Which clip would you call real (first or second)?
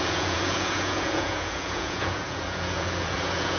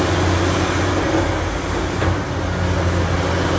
second